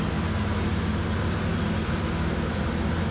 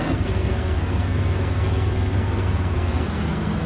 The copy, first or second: second